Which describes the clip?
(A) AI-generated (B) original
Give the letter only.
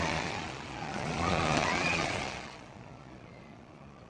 A